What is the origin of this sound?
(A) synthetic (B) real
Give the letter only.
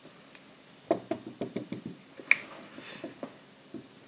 B